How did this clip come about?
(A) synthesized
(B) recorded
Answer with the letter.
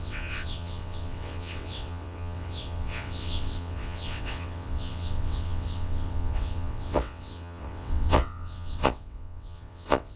A